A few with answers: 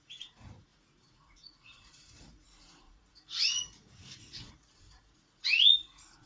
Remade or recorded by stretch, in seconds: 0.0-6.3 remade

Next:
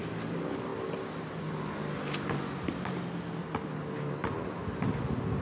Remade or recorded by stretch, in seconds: 0.0-5.4 recorded

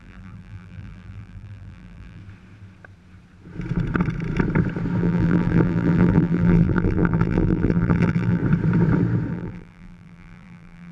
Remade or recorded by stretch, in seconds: 0.0-2.2 remade; 2.2-5.0 recorded; 5.0-8.4 remade; 8.4-9.3 recorded; 9.3-10.9 remade

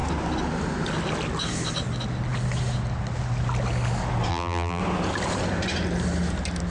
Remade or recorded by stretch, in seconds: 0.0-4.3 recorded; 4.3-4.8 remade; 4.8-6.7 recorded

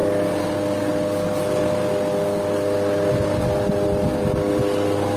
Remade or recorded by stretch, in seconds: 0.0-5.2 recorded